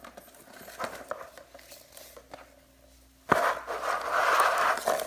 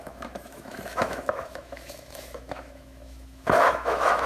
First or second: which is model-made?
second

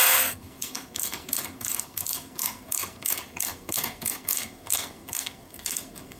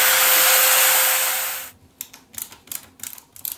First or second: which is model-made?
first